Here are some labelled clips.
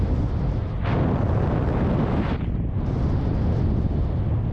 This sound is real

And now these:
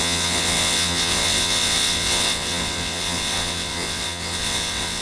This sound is fake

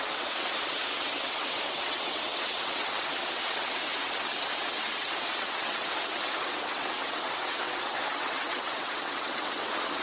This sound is fake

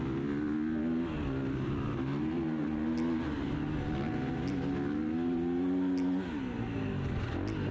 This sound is real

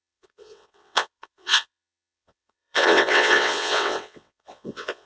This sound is fake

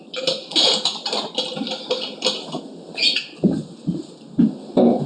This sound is real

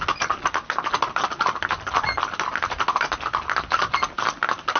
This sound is real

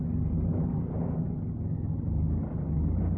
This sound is real